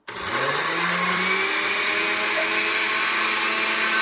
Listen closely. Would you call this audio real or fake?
real